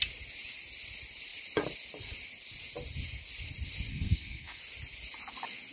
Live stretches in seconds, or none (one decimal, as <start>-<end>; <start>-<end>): 0.0-3.9; 4.6-5.7

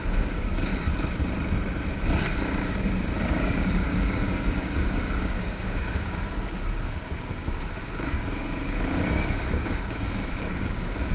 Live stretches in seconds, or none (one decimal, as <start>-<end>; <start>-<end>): 0.7-3.2

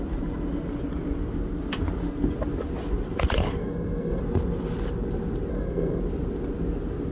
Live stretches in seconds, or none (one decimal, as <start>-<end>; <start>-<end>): 0.0-3.6; 4.2-5.5; 6.0-7.1